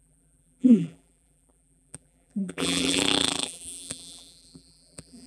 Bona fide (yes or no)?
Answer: no